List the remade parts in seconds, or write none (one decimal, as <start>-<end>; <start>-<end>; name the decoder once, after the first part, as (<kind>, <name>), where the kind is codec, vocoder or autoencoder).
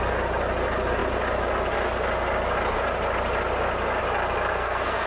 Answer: 4.5-5.1 (codec, SNAC)